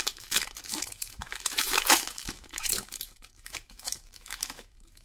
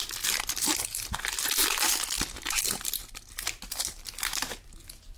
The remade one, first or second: first